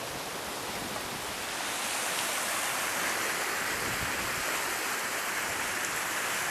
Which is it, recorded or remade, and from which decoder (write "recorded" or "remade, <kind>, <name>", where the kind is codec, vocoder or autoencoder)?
recorded